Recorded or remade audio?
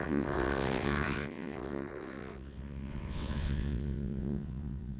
remade